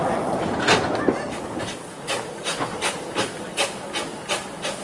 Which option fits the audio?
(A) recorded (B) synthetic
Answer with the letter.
A